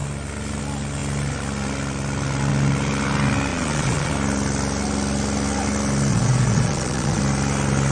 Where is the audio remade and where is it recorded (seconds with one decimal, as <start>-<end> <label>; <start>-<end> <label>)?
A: 0.0-3.5 recorded; 3.5-4.1 remade; 4.1-6.1 recorded; 6.1-7.2 remade; 7.2-7.9 recorded